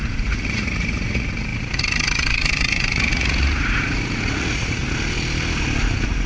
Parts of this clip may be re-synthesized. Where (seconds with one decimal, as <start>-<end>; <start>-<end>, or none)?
0.0-4.8